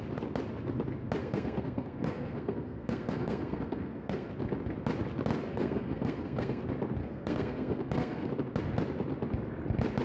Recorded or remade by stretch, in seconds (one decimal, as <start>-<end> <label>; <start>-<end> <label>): 0.0-1.2 recorded; 1.2-4.3 remade; 4.3-5.5 recorded; 5.5-6.6 remade; 6.6-7.0 recorded; 7.0-8.3 remade; 8.3-10.0 recorded